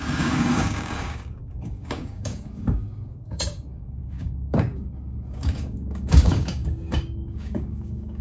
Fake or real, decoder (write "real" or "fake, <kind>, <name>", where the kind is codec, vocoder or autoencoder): fake, codec, DAC